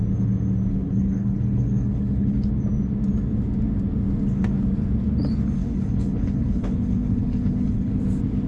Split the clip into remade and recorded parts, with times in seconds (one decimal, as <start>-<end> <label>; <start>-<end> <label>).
0.0-0.7 recorded; 0.7-2.5 remade; 2.5-5.6 recorded; 5.6-8.0 remade; 8.0-8.5 recorded